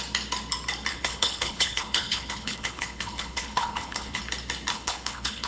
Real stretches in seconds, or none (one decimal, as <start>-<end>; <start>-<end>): 0.0-0.9; 4.2-4.7